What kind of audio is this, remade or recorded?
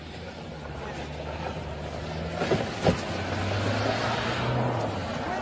recorded